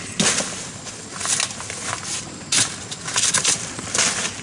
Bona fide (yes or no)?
yes